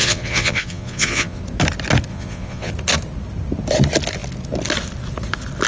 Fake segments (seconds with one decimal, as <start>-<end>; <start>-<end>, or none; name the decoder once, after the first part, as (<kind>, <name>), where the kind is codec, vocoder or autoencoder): 0.0-1.4 (vocoder, Vocos); 2.1-2.7

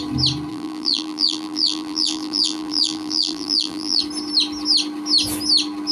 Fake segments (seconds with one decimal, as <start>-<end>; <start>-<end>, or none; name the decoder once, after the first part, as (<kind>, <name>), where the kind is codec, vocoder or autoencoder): 0.5-4.0 (vocoder, BigVGAN v2)

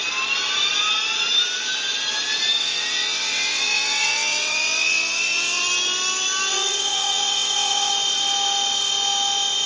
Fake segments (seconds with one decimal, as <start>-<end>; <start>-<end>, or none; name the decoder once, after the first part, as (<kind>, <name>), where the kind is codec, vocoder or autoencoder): 2.6-5.6 (vocoder, WaveNeXt); 6.5-7.9

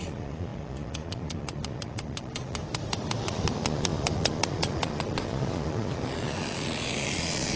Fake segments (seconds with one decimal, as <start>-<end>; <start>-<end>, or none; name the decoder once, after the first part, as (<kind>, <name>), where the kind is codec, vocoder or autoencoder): 0.0-2.6 (vocoder, Vocos); 3.2-7.6

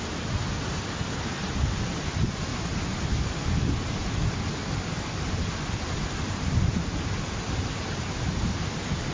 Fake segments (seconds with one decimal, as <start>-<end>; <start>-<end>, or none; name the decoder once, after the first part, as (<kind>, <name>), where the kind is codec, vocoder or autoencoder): none

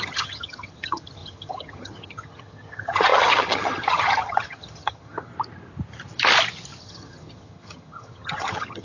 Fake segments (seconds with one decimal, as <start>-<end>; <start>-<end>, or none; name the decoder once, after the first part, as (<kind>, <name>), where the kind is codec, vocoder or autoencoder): 0.0-5.3 (vocoder, HiFi-GAN); 6.8-8.8

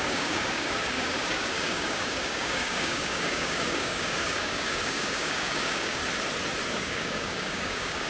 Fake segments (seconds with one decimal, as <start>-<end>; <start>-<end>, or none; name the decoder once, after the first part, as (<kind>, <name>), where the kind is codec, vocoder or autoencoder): 0.0-6.0 (codec, DAC); 6.7-8.1

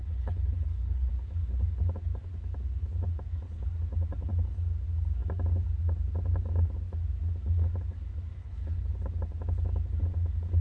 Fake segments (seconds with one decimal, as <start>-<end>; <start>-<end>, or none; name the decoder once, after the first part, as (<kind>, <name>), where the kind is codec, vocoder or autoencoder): 0.0-1.1 (codec, HILCodec); 8.4-8.9